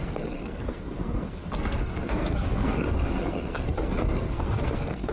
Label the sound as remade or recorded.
remade